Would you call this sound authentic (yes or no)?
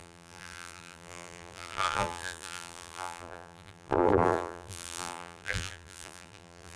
no